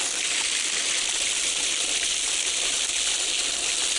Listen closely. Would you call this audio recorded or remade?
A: recorded